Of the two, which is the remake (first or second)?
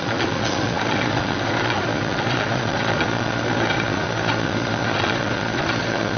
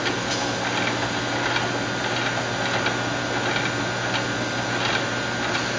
first